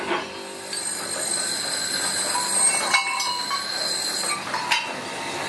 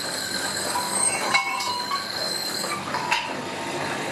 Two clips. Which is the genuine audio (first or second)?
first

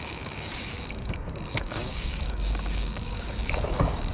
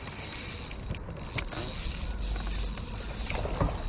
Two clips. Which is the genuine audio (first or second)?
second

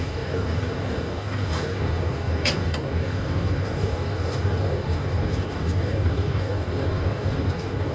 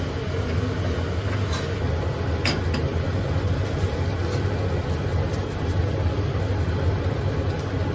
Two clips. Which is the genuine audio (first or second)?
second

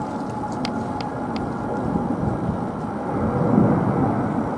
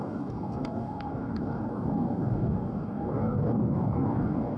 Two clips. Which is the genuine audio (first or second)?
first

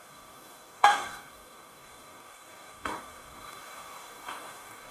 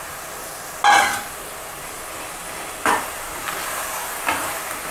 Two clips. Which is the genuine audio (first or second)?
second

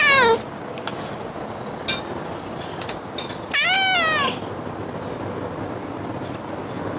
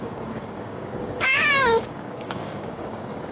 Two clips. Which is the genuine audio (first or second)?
first